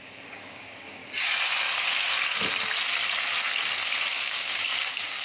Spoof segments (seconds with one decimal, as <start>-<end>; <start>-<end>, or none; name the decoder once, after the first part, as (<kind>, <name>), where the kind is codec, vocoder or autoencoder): 0.0-1.0 (codec, DAC); 4.1-5.2